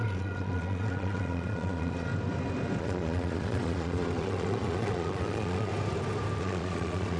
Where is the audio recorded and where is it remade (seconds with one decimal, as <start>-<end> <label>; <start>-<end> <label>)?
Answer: 0.0-2.1 remade; 2.1-2.8 recorded; 2.8-5.7 remade; 5.7-6.4 recorded; 6.4-7.2 remade